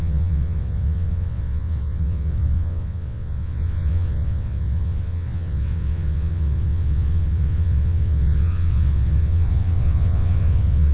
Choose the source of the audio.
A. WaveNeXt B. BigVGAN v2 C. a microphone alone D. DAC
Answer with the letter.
A